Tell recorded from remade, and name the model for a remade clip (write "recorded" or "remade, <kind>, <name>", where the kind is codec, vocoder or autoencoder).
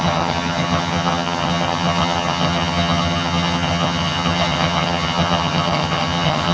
remade, vocoder, HiFi-GAN